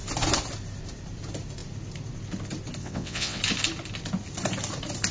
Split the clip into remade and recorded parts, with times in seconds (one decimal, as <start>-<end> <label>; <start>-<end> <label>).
0.0-2.8 recorded; 2.8-3.4 remade; 3.4-5.1 recorded

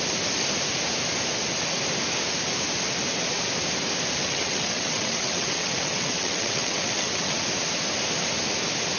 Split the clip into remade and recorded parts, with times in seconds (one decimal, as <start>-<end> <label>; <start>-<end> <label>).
0.0-4.2 recorded; 4.2-7.4 remade; 7.4-9.0 recorded

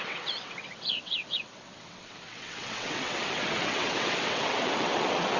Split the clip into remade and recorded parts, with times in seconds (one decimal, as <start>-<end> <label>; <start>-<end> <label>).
0.0-5.4 remade

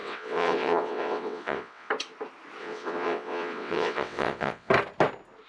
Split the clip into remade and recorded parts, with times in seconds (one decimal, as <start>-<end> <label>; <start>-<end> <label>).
0.0-1.9 remade; 1.9-2.6 recorded; 2.6-4.7 remade; 4.7-5.5 recorded

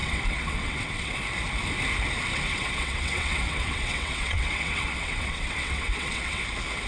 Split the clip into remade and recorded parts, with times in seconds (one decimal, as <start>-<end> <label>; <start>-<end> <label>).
0.0-1.1 remade; 1.1-2.3 recorded; 2.3-6.4 remade; 6.4-6.9 recorded

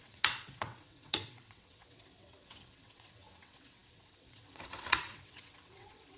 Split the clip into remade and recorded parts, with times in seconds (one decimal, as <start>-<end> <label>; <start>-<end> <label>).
0.0-6.2 remade

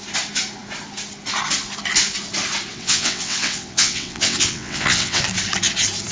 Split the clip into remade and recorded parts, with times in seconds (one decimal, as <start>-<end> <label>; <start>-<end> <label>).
0.0-2.7 recorded; 2.7-5.2 remade; 5.2-6.1 recorded